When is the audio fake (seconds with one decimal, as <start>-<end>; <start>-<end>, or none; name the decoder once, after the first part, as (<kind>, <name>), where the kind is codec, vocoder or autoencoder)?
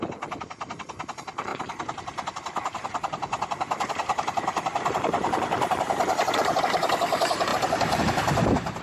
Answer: none